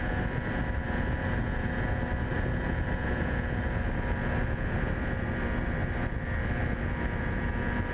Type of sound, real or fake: real